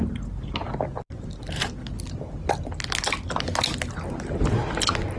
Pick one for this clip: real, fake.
real